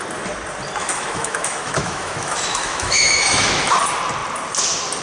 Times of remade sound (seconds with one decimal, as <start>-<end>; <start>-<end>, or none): 0.8-3.8